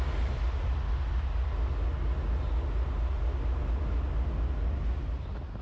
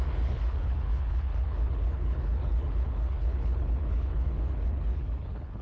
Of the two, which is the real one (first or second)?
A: first